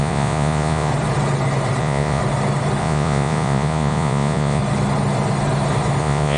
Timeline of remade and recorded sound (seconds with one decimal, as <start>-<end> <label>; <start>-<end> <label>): 0.0-0.9 remade; 0.9-1.8 recorded; 1.8-2.2 remade; 2.2-2.8 recorded; 2.8-4.6 remade; 4.6-6.0 recorded; 6.0-6.4 remade